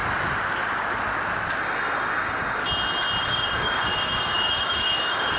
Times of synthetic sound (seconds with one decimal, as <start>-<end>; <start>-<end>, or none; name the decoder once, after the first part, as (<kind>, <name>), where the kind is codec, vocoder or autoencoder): 1.6-2.6 (codec, DAC); 3.2-5.4